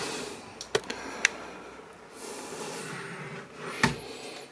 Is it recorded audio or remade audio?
recorded